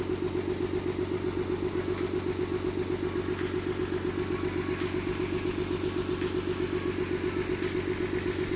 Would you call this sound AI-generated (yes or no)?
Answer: no